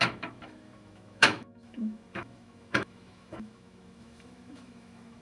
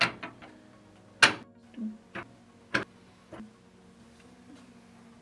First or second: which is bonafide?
second